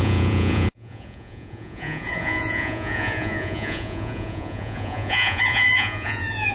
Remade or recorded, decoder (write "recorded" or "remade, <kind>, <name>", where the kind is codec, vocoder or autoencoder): remade, vocoder, Vocos